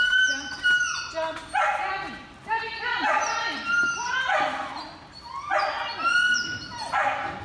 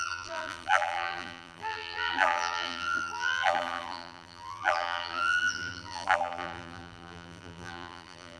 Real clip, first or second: first